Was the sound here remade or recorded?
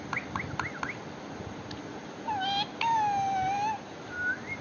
recorded